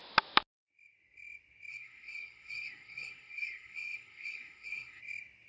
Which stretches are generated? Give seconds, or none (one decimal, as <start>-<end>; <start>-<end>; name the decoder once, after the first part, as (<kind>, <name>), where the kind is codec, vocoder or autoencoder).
1.7-5.0 (codec, SNAC)